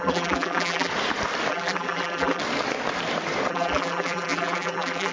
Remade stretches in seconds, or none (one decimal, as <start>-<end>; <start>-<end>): 0.0-0.9; 1.5-2.4; 3.5-5.1